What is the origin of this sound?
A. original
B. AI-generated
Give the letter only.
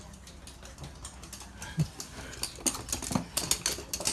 A